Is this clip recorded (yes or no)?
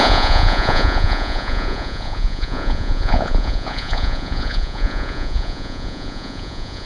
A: no